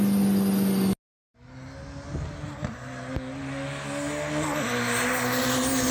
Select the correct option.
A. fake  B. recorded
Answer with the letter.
B